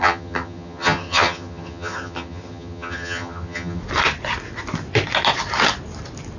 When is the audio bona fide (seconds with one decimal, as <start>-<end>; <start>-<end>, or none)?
3.8-6.4